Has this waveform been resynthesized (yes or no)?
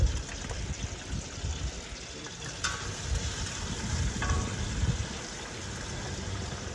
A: no